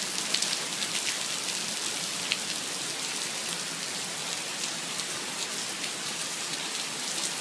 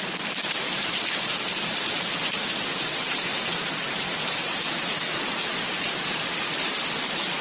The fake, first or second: second